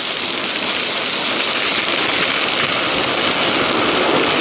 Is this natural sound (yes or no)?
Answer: yes